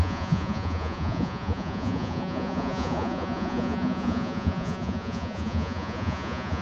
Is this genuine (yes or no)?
no